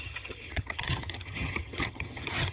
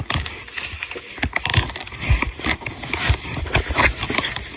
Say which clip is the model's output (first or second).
first